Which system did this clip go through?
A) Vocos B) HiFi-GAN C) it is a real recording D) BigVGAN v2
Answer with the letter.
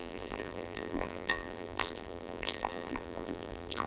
D